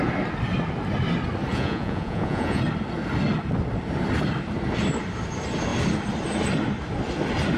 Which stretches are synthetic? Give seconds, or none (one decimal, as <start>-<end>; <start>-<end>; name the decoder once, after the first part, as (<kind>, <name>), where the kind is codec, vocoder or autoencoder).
1.5-2.6 (vocoder, Vocos)

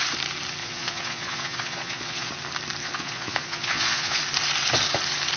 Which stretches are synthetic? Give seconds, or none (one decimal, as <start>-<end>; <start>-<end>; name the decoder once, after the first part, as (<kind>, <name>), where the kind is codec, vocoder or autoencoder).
0.6-2.3 (vocoder, Vocos); 2.8-4.2

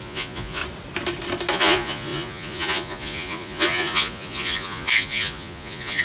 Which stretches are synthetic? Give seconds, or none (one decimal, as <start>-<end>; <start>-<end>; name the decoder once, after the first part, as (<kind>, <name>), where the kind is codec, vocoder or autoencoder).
0.0-0.6 (vocoder, Vocos); 1.5-6.0

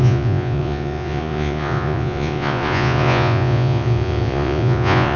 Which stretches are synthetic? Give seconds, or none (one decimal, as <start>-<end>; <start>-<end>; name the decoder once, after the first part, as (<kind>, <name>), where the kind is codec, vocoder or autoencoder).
0.0-5.2 (vocoder, Vocos)

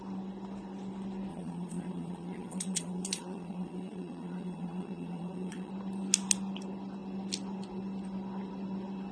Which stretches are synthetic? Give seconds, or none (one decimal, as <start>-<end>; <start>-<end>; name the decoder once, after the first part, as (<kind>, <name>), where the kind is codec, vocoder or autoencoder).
1.3-5.7 (vocoder, Vocos)

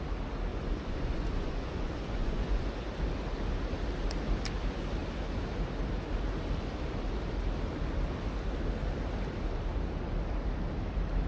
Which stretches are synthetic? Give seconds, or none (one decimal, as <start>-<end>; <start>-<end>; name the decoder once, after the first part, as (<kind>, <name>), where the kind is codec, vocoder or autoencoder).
0.5-2.7 (vocoder, Vocos)